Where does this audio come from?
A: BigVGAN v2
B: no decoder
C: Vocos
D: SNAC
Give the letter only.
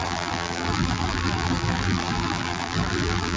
A